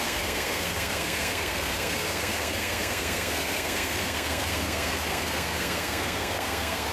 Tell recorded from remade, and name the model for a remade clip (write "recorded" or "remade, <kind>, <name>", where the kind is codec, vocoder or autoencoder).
remade, codec, SNAC